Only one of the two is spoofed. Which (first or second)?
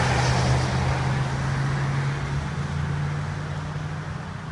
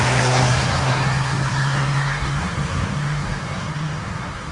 second